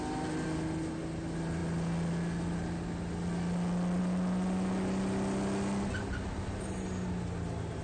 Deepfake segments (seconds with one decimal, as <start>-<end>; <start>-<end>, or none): none